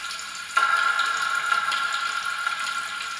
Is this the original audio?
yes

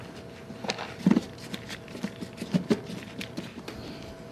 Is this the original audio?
yes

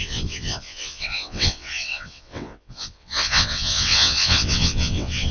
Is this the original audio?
no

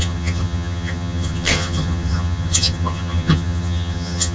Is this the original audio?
no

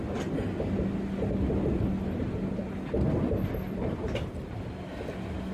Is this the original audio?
yes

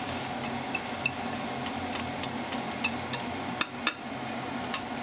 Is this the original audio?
yes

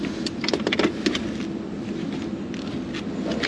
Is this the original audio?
yes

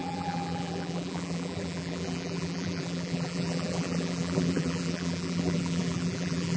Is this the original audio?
no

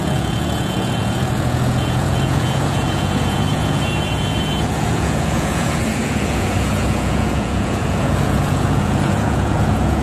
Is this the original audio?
no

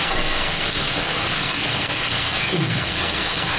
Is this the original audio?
no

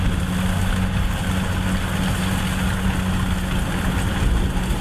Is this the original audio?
yes